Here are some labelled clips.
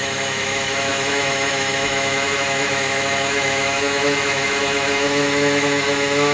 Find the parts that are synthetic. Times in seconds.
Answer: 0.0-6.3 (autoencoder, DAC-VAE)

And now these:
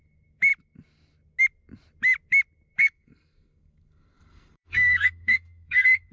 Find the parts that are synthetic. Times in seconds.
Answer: 2.8-6.1 (codec, SNAC)

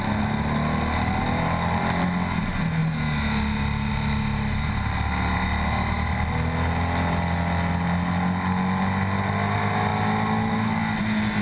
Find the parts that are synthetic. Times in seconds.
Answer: none

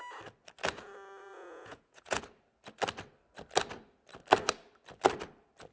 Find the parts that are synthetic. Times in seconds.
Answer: 1.2-2.2 (vocoder, Vocos)

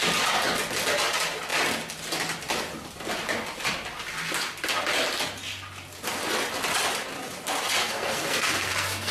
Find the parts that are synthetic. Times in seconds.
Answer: 7.8-9.1 (codec, SNAC)